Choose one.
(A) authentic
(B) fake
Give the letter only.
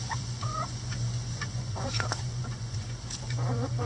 B